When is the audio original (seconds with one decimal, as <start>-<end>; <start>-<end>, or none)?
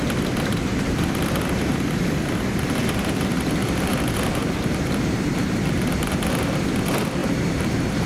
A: 0.0-0.7; 3.5-3.9; 6.2-7.2